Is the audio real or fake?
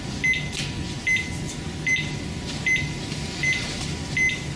real